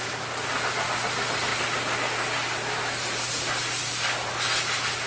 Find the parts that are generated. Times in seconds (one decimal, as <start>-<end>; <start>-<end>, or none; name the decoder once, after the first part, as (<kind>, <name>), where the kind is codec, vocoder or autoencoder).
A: none